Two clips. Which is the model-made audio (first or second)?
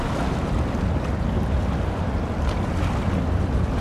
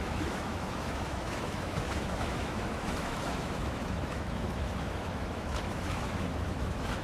second